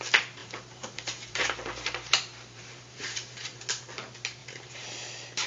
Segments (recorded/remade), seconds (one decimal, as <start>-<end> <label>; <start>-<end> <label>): 0.0-0.4 recorded; 0.4-3.7 remade; 3.7-4.4 recorded; 4.4-4.9 remade; 4.9-5.5 recorded